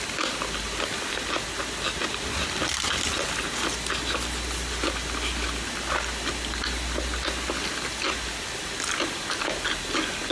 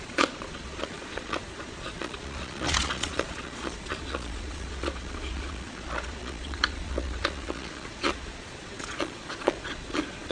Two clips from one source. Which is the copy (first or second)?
second